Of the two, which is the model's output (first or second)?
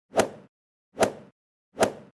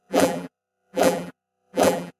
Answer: second